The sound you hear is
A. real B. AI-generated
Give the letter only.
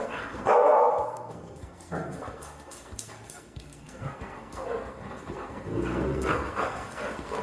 B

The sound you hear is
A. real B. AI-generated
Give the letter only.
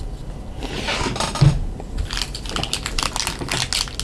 A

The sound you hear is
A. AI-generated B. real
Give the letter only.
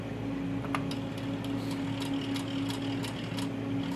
B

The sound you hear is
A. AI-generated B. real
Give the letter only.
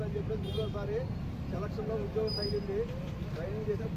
B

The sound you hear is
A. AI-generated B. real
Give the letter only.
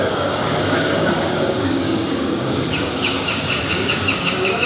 A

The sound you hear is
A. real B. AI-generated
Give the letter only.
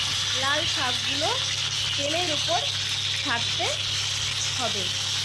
A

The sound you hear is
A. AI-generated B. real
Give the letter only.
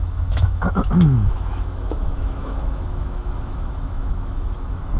A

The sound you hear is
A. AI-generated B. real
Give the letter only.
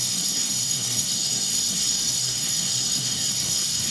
A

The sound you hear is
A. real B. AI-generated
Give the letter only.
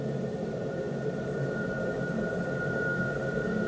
B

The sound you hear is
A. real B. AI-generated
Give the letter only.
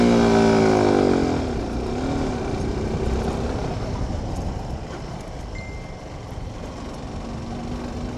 A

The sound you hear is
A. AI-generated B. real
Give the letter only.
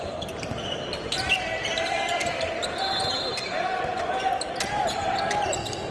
A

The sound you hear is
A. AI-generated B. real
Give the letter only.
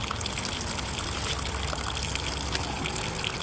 B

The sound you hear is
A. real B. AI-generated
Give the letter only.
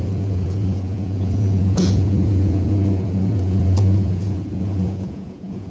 B